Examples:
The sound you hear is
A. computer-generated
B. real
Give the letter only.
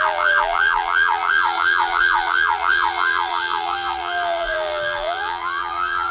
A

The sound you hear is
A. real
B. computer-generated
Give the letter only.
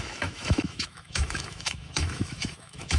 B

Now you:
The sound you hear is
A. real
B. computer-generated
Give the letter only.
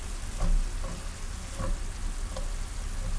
A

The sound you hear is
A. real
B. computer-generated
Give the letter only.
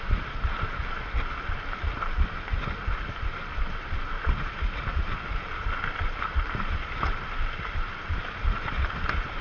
A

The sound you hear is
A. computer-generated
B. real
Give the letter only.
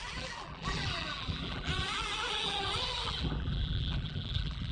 A